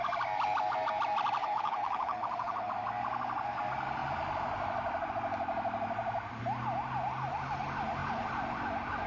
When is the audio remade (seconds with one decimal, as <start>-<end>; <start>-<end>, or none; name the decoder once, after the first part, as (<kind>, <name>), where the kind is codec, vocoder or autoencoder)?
1.4-2.7 (codec, HILCodec)